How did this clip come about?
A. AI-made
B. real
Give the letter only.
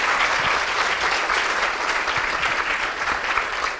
A